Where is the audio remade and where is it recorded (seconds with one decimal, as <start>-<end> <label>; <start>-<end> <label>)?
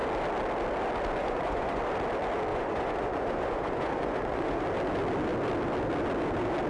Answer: 0.0-1.2 recorded; 1.2-1.8 remade; 1.8-2.5 recorded; 2.5-4.6 remade; 4.6-6.7 recorded